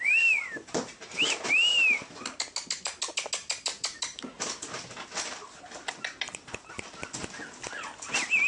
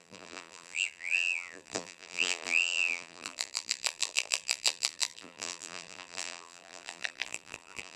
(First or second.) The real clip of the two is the first